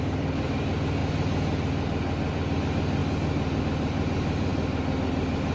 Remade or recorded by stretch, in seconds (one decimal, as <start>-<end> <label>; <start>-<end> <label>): 0.0-5.5 recorded